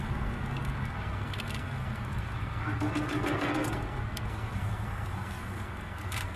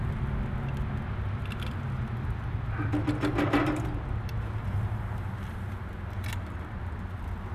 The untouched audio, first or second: second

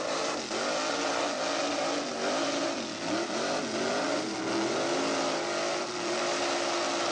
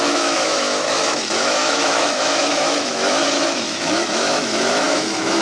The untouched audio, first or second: first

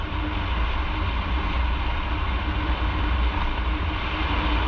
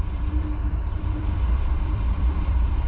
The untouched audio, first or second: first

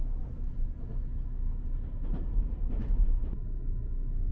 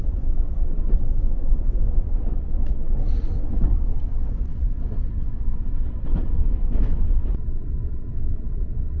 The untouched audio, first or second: first